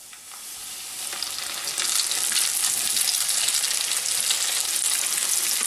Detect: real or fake real